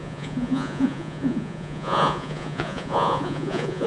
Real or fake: fake